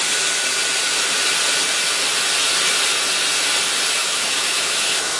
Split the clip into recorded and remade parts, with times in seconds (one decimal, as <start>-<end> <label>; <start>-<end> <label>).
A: 0.0-4.0 recorded; 4.0-5.2 remade